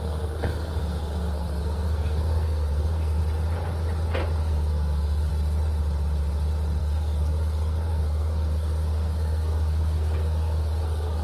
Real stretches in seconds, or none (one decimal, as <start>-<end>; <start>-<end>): 3.2-4.4; 5.3-6.8